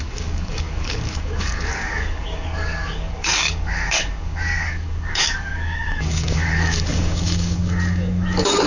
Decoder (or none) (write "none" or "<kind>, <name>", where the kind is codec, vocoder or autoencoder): codec, DAC